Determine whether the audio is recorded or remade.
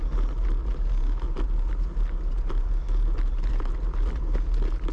recorded